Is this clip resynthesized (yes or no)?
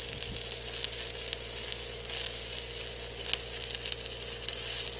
no